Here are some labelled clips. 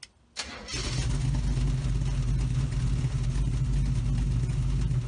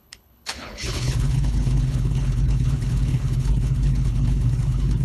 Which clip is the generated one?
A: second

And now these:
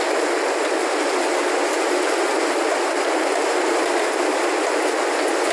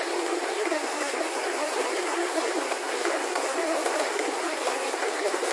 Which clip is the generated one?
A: second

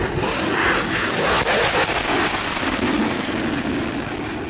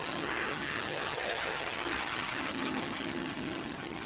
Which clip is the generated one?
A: second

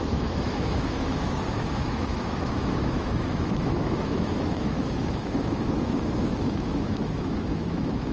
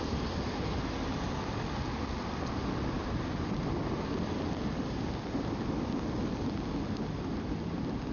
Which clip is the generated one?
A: first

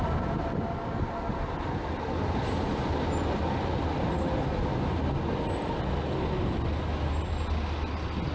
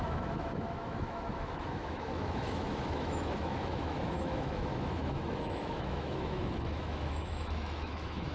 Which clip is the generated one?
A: second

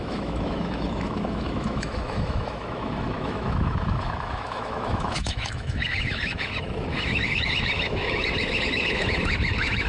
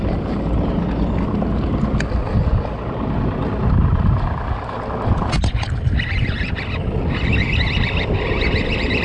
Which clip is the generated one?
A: first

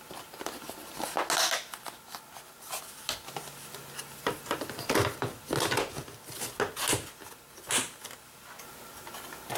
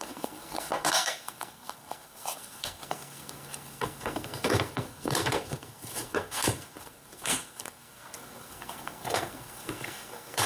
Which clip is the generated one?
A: second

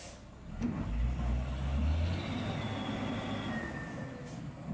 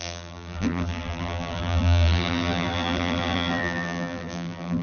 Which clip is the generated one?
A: second